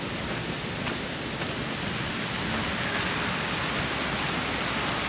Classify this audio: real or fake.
real